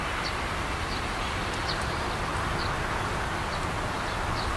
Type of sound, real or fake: real